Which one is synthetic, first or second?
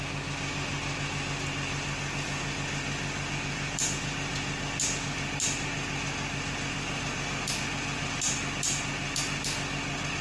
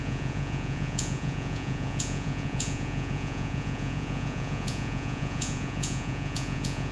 second